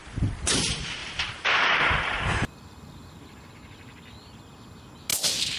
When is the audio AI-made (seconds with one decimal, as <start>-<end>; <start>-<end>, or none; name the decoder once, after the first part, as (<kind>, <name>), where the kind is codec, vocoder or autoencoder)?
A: 1.0-3.5 (vocoder, BigVGAN v2)